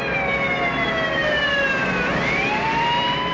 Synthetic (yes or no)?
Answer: no